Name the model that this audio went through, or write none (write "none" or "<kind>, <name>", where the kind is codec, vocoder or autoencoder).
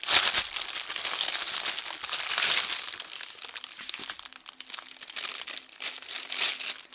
none